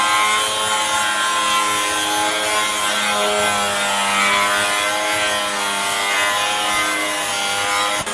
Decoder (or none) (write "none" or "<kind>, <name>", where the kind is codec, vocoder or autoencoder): none